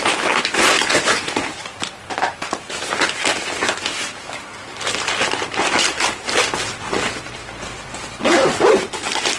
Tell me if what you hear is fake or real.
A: real